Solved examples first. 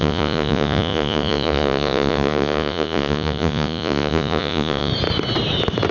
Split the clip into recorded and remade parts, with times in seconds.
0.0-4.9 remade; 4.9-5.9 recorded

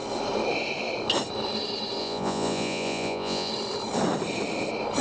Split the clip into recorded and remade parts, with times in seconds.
0.0-2.0 recorded; 2.0-3.5 remade; 3.5-5.0 recorded

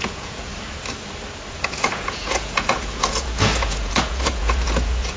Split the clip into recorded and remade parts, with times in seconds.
0.0-0.5 remade; 0.5-1.5 recorded; 1.5-5.2 remade

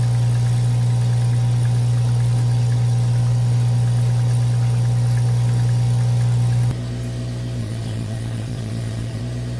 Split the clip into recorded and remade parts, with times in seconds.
0.0-7.6 recorded; 7.6-9.2 remade; 9.2-9.6 recorded